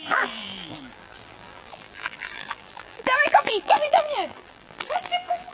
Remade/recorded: remade